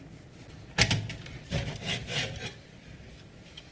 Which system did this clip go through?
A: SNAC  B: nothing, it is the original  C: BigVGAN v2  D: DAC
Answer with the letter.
B